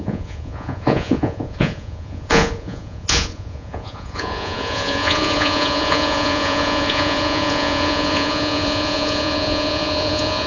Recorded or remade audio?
remade